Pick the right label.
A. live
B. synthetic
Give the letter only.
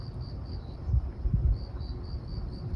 A